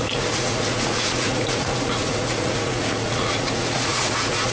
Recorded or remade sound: remade